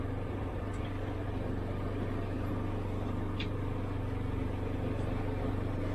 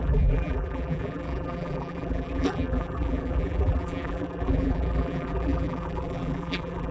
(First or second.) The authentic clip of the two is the first